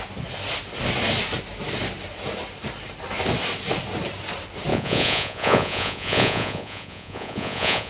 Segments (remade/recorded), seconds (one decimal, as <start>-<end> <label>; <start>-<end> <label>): 0.0-4.7 recorded; 4.7-7.9 remade